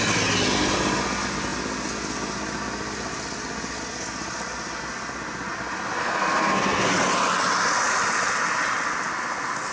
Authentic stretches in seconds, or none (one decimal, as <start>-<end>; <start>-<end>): 0.0-6.0; 6.9-9.7

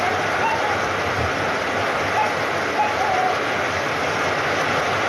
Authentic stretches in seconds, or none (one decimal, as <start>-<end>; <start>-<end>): 0.0-5.1

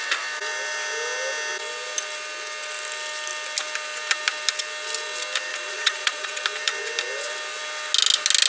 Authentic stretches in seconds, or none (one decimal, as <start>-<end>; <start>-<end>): 0.0-5.5; 6.4-8.5

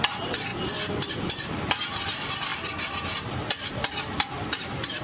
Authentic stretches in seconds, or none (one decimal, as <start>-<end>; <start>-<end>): 0.5-1.1